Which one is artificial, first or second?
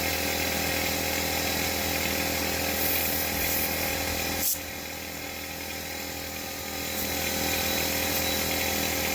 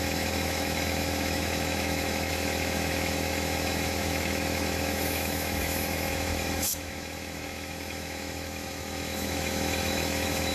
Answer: second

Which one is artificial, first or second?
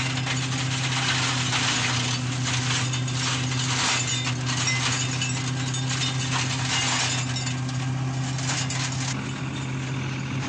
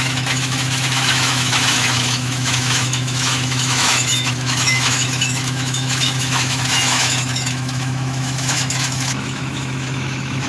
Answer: second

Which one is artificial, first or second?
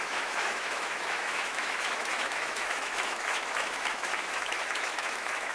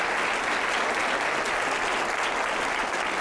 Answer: first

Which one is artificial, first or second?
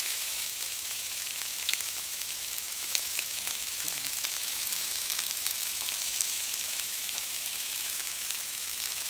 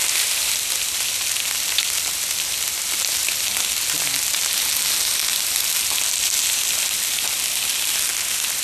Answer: first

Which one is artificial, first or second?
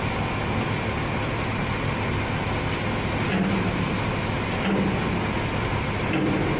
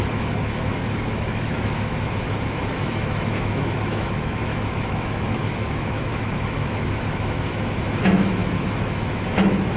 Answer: second